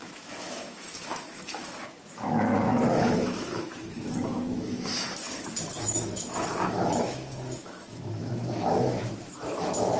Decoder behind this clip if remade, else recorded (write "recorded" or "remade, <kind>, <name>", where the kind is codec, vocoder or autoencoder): remade, autoencoder, DAC-VAE